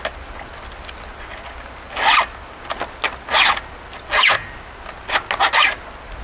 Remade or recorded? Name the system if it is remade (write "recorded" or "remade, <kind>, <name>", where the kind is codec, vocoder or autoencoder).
recorded